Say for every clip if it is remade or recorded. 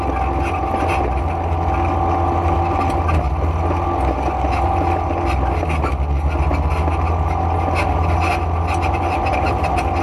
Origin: recorded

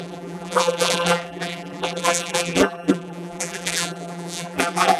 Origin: remade